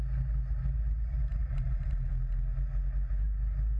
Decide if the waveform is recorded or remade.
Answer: recorded